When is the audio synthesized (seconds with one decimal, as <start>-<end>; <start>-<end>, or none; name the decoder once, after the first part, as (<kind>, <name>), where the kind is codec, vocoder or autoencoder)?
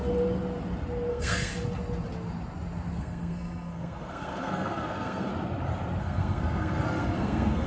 1.1-1.5 (codec, SNAC); 3.0-5.3; 6.0-7.7